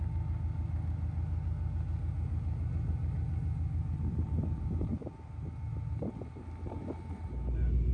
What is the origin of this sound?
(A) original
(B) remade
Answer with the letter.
A